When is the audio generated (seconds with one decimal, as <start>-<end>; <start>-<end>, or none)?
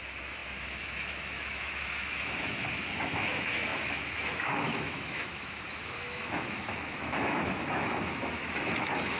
0.0-9.2